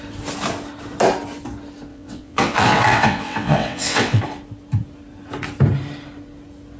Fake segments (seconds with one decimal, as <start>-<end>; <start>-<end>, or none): 1.9-4.2

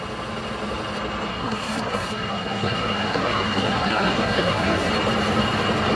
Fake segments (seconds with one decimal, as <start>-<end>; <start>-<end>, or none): 1.3-4.9

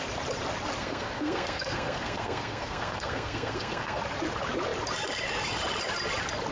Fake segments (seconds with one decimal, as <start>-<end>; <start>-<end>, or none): 0.8-4.0